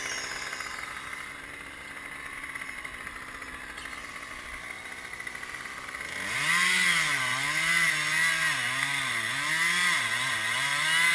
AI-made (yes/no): no